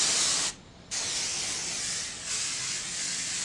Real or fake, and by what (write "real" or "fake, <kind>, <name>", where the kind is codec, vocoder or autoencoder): real